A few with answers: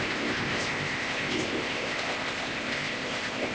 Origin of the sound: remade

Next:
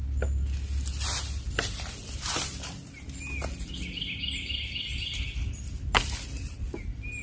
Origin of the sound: recorded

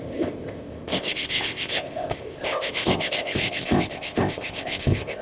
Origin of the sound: remade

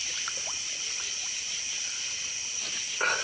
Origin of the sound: recorded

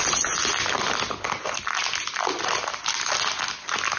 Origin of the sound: recorded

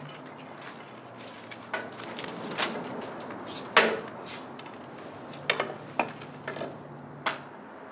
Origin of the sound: recorded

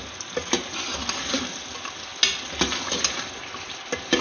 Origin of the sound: recorded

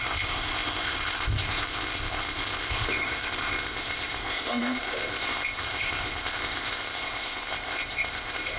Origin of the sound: remade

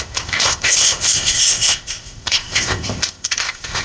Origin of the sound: remade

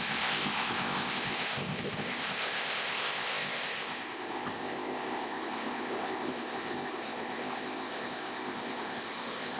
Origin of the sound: remade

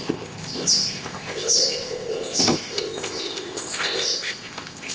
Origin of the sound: remade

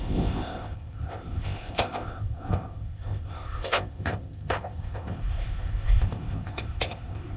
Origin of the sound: remade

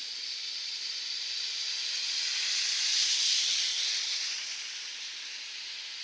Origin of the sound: recorded